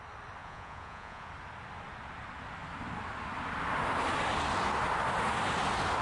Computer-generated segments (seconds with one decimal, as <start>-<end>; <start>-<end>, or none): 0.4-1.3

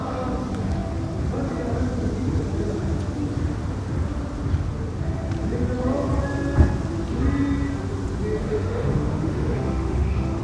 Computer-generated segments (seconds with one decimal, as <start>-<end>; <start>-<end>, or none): 8.4-10.4

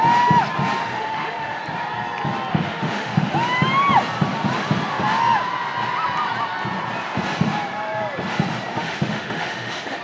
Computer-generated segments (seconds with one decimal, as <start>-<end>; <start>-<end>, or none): 0.8-1.6; 2.5-3.3; 8.7-10.0